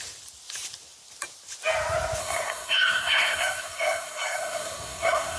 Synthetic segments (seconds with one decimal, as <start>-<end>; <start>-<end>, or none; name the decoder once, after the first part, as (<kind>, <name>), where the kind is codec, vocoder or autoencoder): 2.2-5.4 (codec, SNAC)